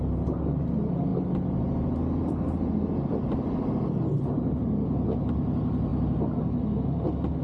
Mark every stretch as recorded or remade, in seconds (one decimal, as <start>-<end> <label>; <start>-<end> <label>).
0.0-7.4 recorded